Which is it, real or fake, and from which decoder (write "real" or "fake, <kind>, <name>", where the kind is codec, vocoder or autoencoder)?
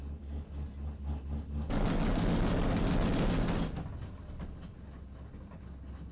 real